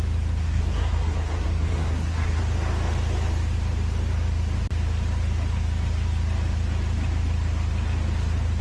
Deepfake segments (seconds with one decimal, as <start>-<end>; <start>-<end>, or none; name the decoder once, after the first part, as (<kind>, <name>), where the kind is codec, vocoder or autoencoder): 0.4-2.4 (codec, SNAC)